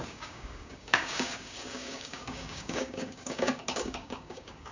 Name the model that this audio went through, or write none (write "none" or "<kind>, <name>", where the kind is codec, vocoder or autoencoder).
codec, DAC